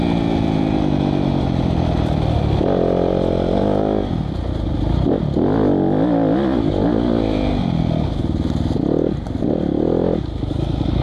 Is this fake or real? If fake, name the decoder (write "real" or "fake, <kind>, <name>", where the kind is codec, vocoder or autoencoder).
real